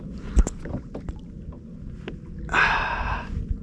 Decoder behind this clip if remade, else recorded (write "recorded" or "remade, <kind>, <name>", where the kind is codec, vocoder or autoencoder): recorded